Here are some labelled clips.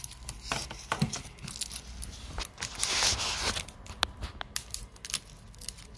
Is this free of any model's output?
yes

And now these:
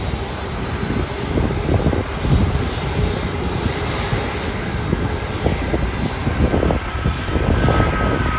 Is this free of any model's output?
yes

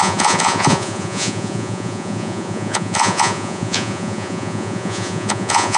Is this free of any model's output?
no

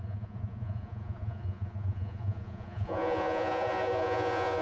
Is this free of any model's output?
no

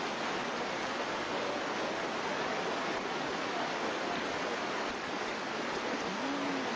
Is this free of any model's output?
yes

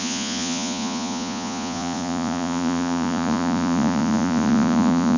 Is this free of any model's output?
no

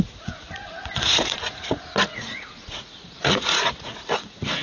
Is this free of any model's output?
no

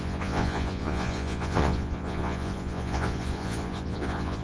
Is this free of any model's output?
no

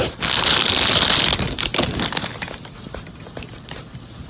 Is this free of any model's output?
yes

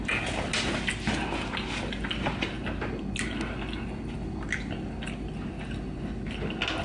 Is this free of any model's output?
yes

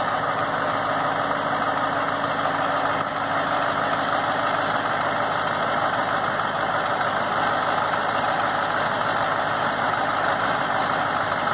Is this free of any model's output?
yes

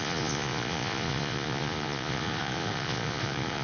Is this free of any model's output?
no